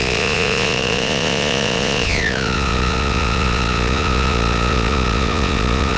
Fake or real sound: fake